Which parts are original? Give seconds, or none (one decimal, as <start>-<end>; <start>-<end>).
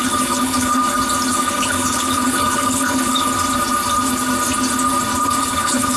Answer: 0.8-1.3; 3.3-5.4